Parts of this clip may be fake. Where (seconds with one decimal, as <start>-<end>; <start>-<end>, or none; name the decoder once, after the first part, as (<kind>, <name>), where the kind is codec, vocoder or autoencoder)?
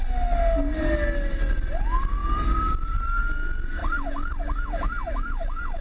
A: 2.2-3.2 (vocoder, BigVGAN v2); 3.8-5.8